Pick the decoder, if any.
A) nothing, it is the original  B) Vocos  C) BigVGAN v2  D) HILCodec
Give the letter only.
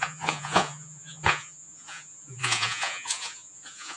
B